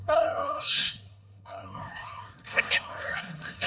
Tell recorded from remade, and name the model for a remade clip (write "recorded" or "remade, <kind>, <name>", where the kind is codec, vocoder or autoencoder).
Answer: remade, codec, SNAC